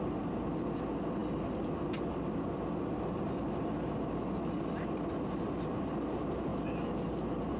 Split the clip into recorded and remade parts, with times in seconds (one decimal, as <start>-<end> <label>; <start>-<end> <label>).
0.0-7.6 recorded